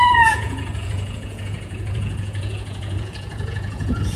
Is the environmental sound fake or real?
fake